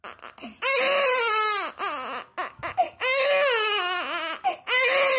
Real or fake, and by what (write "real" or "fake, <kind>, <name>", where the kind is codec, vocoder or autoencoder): real